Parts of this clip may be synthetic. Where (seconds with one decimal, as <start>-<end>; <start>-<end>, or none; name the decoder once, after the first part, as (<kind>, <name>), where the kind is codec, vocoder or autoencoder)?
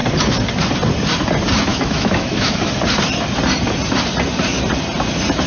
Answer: 1.7-2.7 (autoencoder, DAC-VAE)